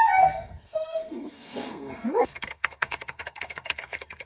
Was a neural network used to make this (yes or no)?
yes